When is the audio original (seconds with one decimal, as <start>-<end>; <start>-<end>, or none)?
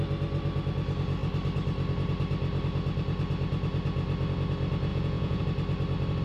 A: 0.0-4.9; 5.4-6.2